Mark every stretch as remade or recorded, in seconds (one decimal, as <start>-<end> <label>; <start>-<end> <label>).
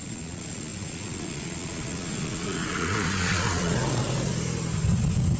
0.0-4.3 remade; 4.3-5.4 recorded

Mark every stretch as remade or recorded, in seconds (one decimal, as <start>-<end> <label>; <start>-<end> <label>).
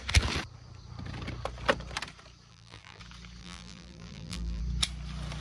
0.0-2.5 recorded; 2.5-3.0 remade; 3.0-3.4 recorded; 3.4-4.6 remade; 4.6-5.4 recorded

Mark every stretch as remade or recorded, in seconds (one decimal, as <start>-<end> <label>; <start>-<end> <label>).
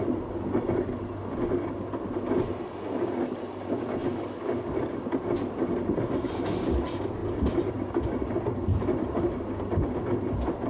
0.0-10.7 recorded